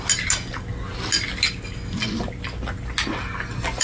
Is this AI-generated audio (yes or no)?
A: no